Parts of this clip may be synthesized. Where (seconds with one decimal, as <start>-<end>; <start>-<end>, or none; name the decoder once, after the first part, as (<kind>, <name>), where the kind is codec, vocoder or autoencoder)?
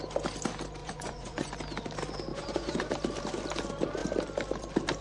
0.8-1.5 (vocoder, Vocos); 2.3-2.9